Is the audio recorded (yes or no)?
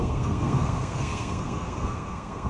no